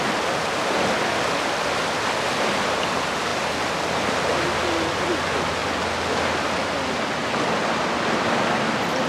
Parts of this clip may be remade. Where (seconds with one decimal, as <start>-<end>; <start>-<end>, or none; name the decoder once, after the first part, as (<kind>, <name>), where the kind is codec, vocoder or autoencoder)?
none